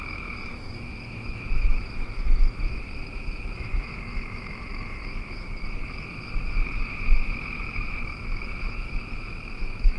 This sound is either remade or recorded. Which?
remade